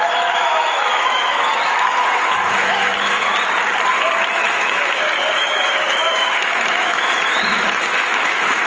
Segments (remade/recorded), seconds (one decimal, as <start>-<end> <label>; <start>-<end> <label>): 0.0-3.3 remade; 3.3-3.9 recorded; 3.9-8.7 remade

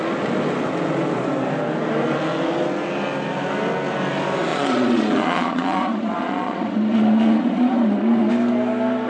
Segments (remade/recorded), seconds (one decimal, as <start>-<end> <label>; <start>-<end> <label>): 0.0-4.5 recorded; 4.5-8.3 remade; 8.3-9.1 recorded

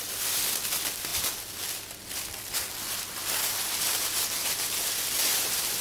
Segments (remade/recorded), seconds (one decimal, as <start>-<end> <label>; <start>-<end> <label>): 0.0-5.8 recorded

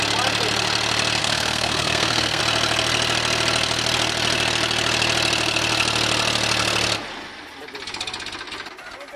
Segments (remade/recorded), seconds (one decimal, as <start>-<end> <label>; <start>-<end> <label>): 0.0-1.2 recorded; 1.2-2.4 remade; 2.4-9.2 recorded